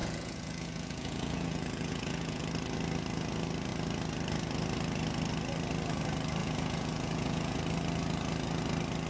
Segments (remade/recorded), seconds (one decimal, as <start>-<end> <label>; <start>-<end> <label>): 0.0-2.4 remade; 2.4-6.4 recorded; 6.4-7.6 remade; 7.6-9.1 recorded